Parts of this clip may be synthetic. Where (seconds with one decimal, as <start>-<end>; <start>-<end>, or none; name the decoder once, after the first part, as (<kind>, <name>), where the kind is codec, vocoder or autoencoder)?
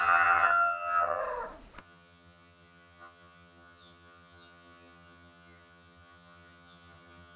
0.0-1.2 (vocoder, HiFi-GAN); 1.8-7.4